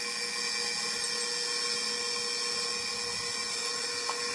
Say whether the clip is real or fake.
real